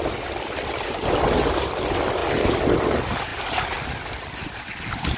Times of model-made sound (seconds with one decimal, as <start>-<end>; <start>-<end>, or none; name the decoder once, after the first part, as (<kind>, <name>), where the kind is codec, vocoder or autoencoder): none